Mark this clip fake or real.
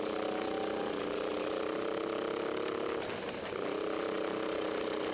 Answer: real